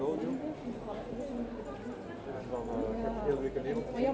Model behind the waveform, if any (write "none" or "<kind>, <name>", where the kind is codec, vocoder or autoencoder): none